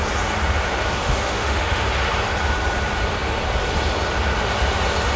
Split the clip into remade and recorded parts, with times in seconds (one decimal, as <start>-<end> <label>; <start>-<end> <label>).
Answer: 0.0-1.0 recorded; 1.0-1.8 remade; 1.8-5.2 recorded